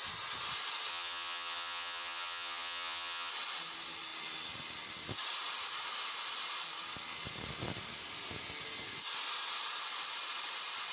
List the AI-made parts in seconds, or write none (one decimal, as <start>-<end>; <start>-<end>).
0.9-3.3